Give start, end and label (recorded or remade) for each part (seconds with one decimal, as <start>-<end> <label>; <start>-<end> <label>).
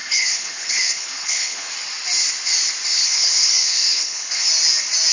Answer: 0.0-1.7 remade; 1.7-2.9 recorded; 2.9-4.5 remade; 4.5-5.1 recorded